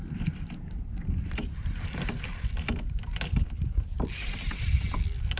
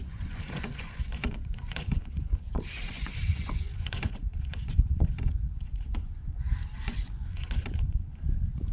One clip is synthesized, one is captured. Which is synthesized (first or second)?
second